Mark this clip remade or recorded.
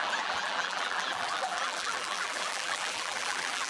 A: remade